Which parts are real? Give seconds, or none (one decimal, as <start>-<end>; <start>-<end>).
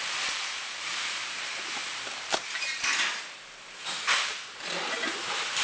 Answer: 1.8-5.6